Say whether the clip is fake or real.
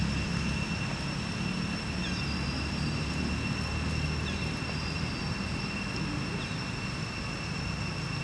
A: real